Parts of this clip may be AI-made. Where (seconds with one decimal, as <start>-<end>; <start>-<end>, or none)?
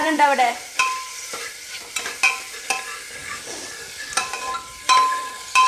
0.0-1.8; 3.2-5.3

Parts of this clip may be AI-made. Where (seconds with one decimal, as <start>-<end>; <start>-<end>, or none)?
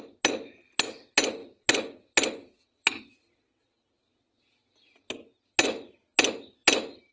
none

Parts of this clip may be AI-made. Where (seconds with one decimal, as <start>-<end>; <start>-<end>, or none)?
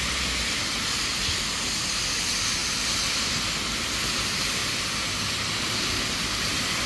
2.6-3.2; 4.6-6.0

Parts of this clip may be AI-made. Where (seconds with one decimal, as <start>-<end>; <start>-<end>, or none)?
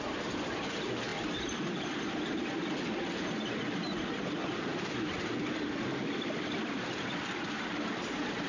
4.7-5.5; 6.0-7.2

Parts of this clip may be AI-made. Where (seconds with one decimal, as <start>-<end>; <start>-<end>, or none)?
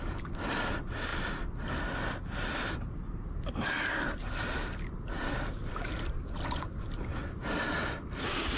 none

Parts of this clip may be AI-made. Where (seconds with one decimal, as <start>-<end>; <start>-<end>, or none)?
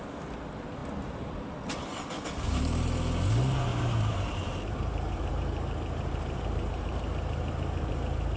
3.7-8.4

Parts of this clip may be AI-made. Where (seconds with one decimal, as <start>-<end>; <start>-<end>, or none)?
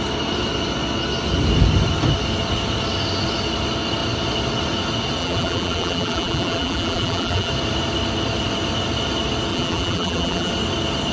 5.2-7.5; 9.5-10.5